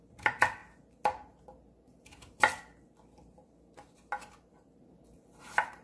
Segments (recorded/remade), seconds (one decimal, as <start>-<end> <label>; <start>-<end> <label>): 0.0-5.8 recorded